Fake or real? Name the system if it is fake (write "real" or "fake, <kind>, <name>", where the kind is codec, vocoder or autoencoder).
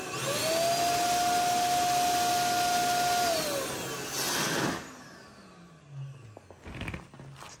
real